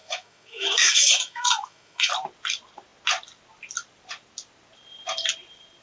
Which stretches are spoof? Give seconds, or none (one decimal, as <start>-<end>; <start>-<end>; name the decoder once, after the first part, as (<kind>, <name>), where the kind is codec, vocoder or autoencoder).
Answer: 0.0-2.1 (autoencoder, DAC-VAE)